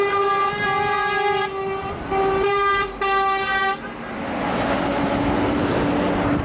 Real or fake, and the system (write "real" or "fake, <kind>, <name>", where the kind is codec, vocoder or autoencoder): real